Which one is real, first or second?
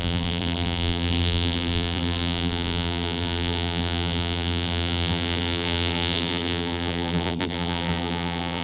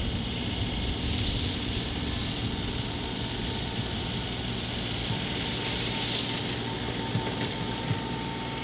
second